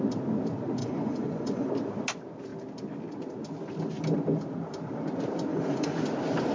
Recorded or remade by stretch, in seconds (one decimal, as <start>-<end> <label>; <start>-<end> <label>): 0.0-0.8 recorded; 0.8-1.7 remade; 1.7-5.5 recorded; 5.5-6.0 remade; 6.0-6.5 recorded